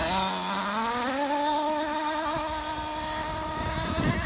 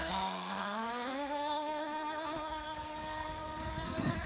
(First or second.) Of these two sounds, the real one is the first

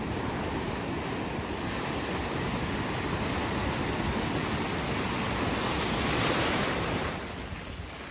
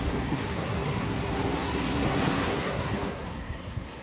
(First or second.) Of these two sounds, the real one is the first